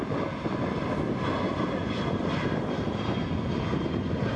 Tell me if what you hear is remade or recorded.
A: recorded